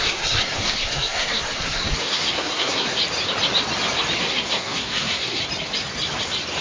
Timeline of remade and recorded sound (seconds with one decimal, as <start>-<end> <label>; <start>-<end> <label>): 0.0-3.0 remade; 3.0-4.2 recorded; 4.2-5.4 remade; 5.4-6.6 recorded